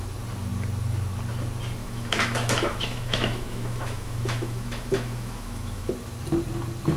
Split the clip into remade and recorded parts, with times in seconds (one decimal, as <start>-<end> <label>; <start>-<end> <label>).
0.0-1.8 recorded; 1.8-5.9 remade; 5.9-7.0 recorded